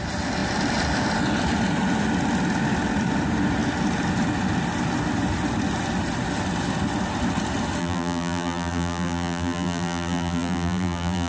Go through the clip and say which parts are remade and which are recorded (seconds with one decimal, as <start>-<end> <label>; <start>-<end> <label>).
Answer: 0.0-7.8 recorded; 7.8-11.3 remade